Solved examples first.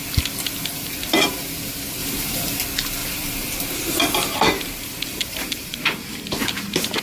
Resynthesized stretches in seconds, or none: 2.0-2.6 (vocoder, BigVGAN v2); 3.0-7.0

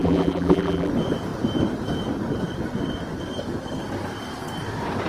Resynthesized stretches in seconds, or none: 0.0-0.9 (vocoder, BigVGAN v2)

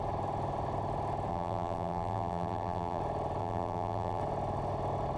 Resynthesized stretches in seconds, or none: 1.3-3.0 (vocoder, BigVGAN v2); 3.4-4.2

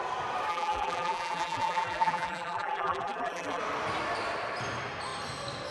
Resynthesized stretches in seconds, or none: 0.5-3.6 (vocoder, BigVGAN v2)